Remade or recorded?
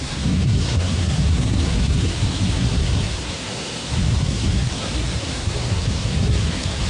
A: remade